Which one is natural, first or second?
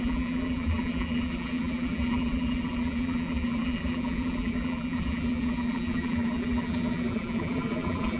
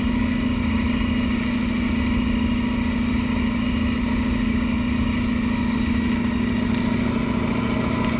second